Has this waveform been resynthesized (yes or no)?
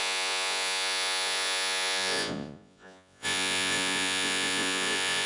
yes